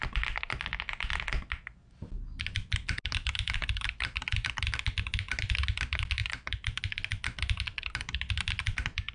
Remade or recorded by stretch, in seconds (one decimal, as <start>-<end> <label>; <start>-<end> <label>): 0.0-6.2 recorded; 6.2-6.8 remade; 6.8-9.1 recorded